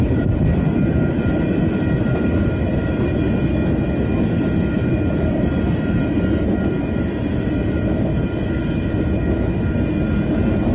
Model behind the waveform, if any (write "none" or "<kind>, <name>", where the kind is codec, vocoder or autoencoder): none